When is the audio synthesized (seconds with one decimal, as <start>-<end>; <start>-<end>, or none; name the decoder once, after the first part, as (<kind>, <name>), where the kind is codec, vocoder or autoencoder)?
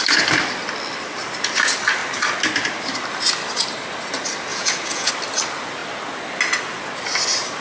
4.5-5.1 (vocoder, Vocos)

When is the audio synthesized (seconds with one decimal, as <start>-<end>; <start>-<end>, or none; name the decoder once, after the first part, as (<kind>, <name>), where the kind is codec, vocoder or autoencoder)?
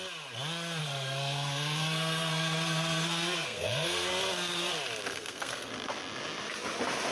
0.8-4.1 (codec, SNAC); 5.1-5.7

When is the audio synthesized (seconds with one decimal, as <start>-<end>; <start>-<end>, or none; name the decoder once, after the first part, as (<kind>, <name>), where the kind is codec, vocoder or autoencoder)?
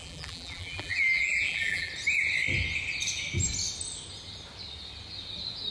0.0-1.9 (vocoder, BigVGAN v2)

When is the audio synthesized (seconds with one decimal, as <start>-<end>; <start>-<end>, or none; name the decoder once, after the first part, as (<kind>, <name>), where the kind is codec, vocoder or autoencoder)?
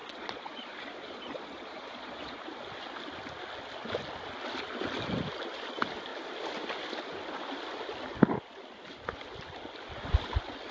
0.0-2.4 (vocoder, Vocos)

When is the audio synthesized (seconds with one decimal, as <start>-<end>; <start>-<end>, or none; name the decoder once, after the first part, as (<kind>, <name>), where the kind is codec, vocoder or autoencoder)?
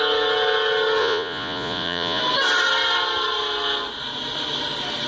1.0-2.2 (vocoder, Vocos)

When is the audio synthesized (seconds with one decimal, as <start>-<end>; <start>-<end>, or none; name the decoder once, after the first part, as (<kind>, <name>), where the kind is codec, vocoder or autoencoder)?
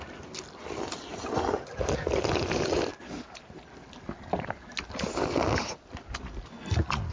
none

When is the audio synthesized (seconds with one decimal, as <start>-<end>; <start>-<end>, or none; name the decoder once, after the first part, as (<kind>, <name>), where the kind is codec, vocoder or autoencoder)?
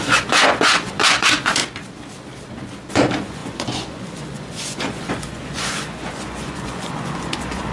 0.0-1.6 (vocoder, Vocos); 2.9-7.7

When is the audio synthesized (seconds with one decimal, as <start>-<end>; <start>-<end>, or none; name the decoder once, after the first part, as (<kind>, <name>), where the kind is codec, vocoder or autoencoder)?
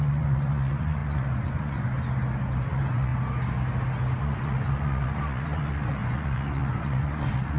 0.0-1.9 (vocoder, Vocos); 2.7-3.1; 4.2-7.6